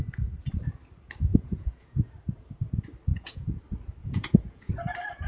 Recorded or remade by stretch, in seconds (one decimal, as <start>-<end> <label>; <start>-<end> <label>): 0.0-1.3 recorded; 1.3-2.1 remade; 2.1-3.1 recorded; 3.1-3.6 remade; 3.6-4.0 recorded; 4.0-4.7 remade; 4.7-5.3 recorded